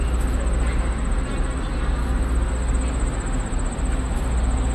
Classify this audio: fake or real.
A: real